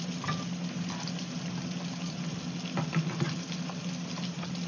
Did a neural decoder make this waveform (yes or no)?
no